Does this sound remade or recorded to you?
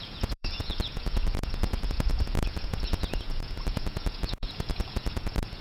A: remade